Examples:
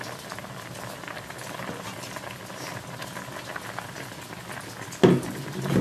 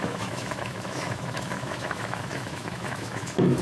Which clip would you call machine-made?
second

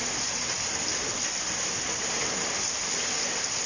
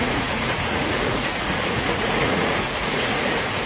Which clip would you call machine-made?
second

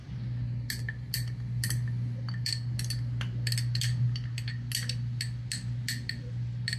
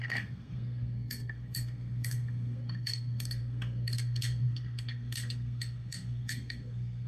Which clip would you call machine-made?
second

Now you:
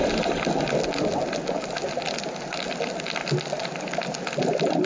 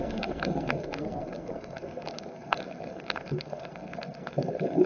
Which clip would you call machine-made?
second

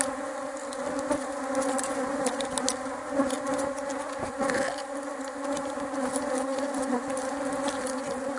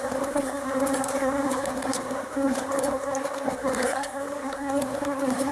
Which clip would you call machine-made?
second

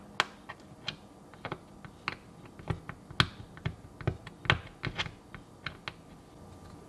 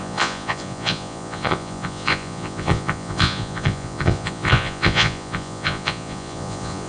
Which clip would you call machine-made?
second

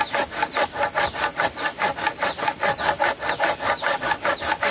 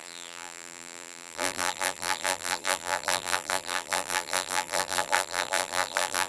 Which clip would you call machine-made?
second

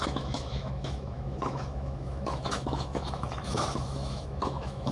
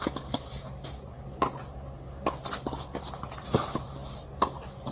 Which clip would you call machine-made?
first